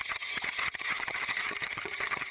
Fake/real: fake